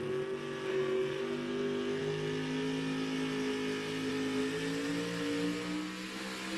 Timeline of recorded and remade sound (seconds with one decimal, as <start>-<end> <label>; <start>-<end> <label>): 0.0-0.7 recorded; 0.7-1.2 remade; 1.2-6.6 recorded